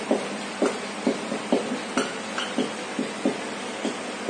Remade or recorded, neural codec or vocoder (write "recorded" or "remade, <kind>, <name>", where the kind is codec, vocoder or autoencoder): recorded